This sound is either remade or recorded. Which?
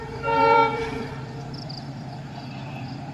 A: remade